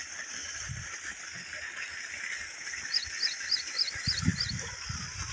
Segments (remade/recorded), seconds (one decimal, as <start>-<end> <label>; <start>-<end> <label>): 0.0-5.3 recorded